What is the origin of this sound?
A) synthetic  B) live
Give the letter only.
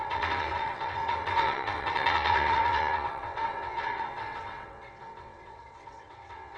A